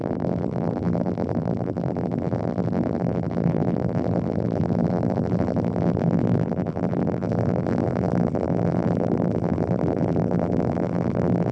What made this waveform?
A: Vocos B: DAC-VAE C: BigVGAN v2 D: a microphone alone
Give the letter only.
C